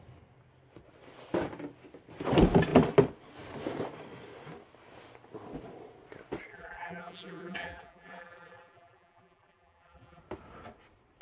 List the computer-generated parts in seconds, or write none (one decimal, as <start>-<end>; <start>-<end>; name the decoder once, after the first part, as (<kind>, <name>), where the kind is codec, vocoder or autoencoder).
6.5-10.2 (vocoder, BigVGAN v2)